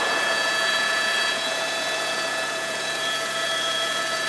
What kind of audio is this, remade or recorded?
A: remade